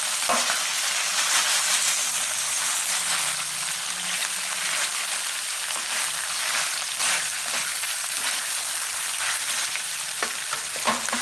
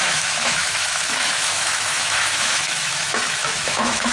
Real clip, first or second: first